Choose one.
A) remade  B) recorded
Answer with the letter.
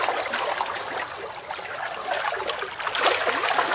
B